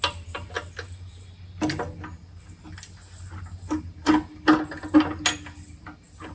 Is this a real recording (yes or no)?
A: yes